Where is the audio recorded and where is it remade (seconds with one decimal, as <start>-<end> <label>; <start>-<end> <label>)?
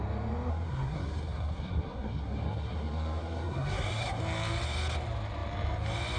0.0-0.5 recorded; 0.5-4.2 remade; 4.2-6.2 recorded